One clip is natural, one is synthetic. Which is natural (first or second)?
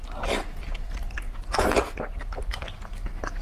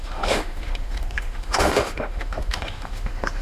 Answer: first